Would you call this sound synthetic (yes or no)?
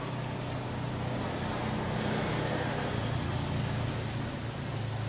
no